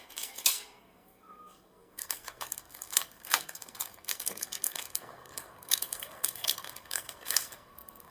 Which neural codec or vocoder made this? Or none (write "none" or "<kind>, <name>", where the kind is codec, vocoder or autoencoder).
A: codec, SNAC